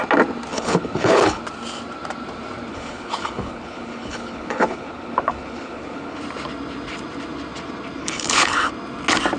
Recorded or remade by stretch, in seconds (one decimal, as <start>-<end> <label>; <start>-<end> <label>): 0.0-0.5 recorded; 0.5-1.4 remade; 1.4-2.7 recorded; 2.7-6.2 remade; 6.2-8.0 recorded; 8.0-8.7 remade; 8.7-9.4 recorded